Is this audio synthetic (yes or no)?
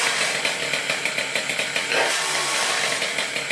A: yes